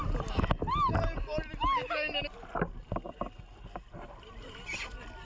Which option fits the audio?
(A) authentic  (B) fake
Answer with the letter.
A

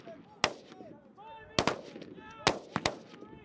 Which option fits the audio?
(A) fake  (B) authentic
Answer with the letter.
B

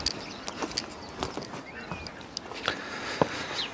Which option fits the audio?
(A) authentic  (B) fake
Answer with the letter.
A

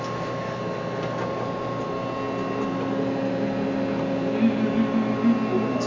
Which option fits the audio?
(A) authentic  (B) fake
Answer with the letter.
A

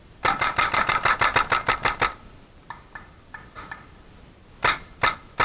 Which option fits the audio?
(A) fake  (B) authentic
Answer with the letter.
B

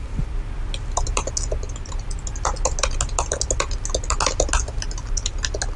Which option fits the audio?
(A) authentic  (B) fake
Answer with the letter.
A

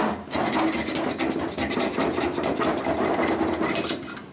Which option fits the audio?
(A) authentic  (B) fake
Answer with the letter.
A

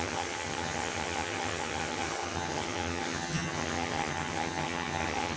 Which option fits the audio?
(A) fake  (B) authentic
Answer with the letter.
A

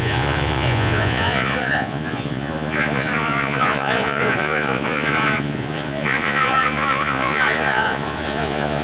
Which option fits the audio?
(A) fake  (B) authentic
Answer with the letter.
A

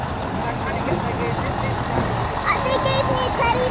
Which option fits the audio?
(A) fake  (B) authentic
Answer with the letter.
B